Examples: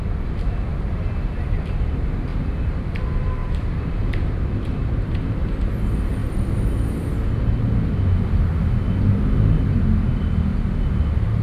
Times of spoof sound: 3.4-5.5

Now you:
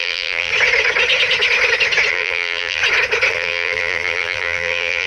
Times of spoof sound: 0.0-0.5; 2.1-2.8; 3.3-5.1

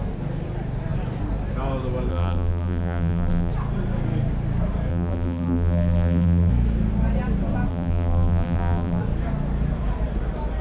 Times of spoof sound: 2.1-3.5; 4.9-6.5; 7.7-9.0